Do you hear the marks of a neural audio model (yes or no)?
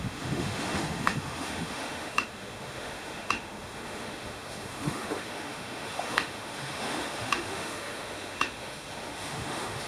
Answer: yes